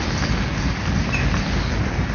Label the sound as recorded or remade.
recorded